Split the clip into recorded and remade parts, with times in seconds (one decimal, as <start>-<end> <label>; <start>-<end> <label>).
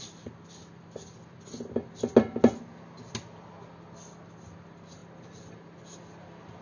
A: 0.0-6.6 recorded